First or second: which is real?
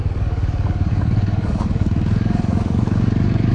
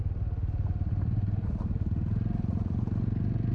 second